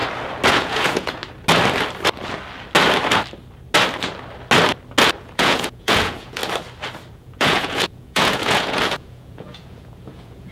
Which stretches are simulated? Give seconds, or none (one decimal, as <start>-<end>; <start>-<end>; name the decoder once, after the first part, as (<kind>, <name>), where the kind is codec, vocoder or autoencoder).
0.5-1.2 (vocoder, Vocos); 5.2-6.4; 7.1-10.5